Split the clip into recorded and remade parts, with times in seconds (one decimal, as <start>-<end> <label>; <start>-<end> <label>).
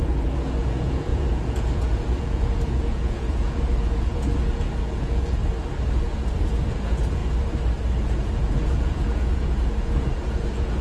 0.0-5.4 remade; 5.4-6.6 recorded; 6.6-7.2 remade; 7.2-8.0 recorded; 8.0-10.8 remade